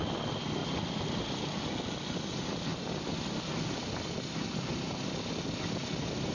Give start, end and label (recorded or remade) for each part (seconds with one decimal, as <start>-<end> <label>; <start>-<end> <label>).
0.0-6.3 recorded